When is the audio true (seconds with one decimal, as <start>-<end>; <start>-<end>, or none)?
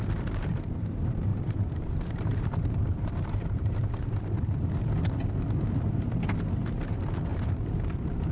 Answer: 0.0-1.3; 4.5-7.3